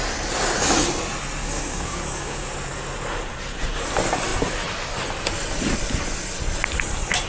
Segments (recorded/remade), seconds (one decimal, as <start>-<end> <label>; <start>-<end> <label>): 0.0-1.4 recorded; 1.4-2.5 remade; 2.5-7.3 recorded